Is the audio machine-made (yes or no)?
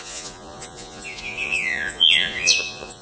yes